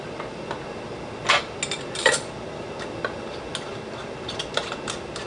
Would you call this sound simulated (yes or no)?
no